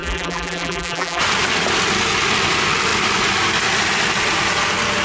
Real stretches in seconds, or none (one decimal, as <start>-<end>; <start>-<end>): 1.2-5.0